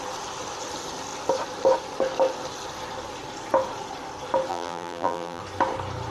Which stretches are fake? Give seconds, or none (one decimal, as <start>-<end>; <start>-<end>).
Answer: 4.5-5.4